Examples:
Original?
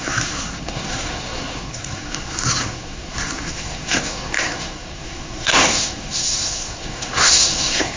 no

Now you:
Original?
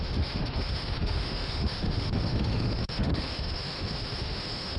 no